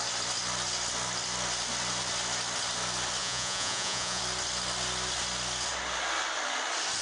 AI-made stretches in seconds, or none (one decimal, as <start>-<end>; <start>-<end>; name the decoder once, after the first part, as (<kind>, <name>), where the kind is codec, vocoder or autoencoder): 3.2-4.2 (vocoder, Vocos)